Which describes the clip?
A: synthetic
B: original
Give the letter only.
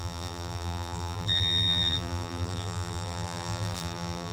A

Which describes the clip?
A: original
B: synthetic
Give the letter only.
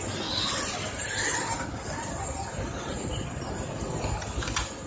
A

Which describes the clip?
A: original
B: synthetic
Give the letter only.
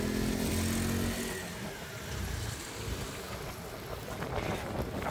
A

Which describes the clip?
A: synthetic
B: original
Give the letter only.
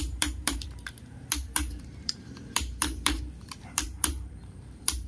A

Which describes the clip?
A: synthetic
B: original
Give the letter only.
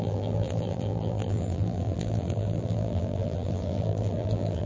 A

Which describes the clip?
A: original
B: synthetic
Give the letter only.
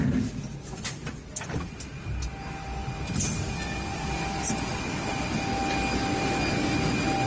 A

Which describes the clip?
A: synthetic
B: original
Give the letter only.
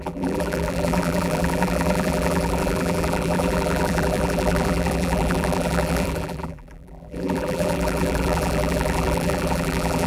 A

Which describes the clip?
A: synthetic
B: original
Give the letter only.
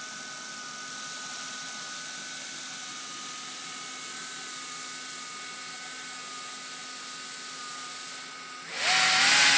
B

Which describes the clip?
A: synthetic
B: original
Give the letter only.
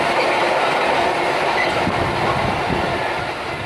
B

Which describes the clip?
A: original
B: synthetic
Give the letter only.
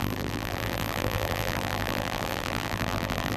B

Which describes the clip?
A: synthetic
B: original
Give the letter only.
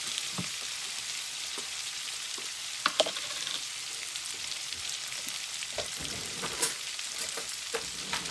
A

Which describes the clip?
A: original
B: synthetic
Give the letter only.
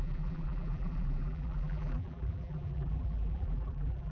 B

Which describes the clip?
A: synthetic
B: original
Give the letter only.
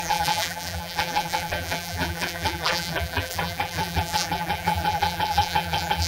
A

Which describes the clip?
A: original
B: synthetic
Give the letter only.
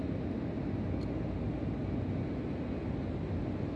A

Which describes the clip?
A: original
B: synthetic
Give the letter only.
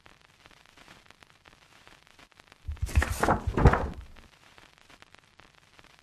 A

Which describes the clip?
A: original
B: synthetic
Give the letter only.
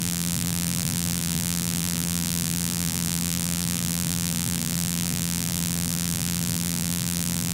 B